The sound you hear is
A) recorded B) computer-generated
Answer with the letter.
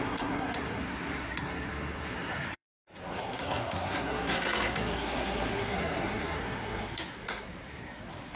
B